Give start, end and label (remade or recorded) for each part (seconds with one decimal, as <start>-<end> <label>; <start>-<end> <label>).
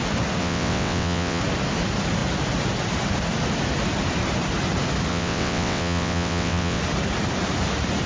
0.0-0.4 recorded; 0.4-1.4 remade; 1.4-5.1 recorded; 5.1-6.8 remade; 6.8-8.1 recorded